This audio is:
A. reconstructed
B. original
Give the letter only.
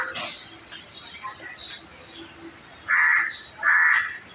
A